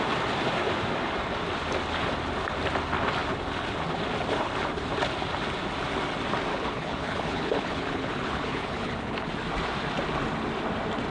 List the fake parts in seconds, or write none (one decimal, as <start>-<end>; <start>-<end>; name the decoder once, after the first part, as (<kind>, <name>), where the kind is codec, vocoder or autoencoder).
6.5-9.3 (codec, HILCodec)